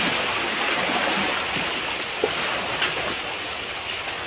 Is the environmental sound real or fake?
real